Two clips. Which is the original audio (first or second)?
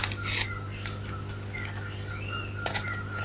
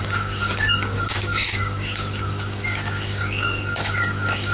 first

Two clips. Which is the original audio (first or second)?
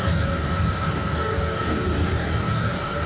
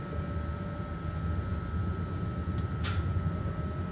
second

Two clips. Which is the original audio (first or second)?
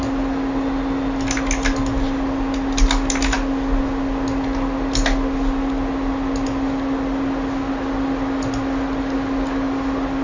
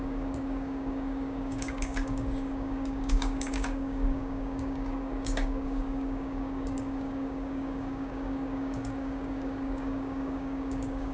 first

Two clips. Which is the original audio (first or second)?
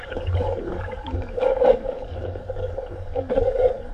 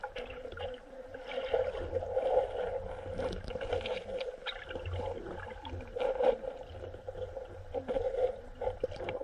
second